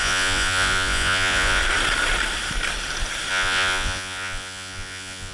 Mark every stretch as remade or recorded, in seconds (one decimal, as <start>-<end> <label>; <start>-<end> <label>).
0.0-1.6 remade; 1.6-3.3 recorded; 3.3-5.3 remade